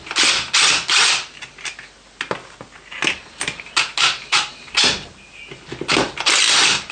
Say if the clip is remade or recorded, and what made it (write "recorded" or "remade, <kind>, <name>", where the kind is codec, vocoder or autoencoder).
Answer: recorded